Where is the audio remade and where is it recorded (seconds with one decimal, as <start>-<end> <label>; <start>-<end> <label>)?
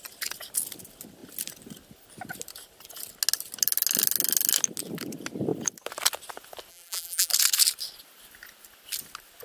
0.0-6.7 recorded; 6.7-7.3 remade; 7.3-9.4 recorded